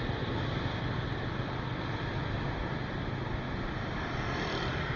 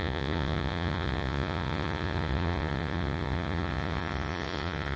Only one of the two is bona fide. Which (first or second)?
first